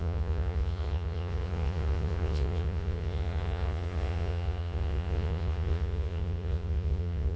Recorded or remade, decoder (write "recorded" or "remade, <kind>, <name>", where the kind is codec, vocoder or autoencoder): remade, vocoder, Vocos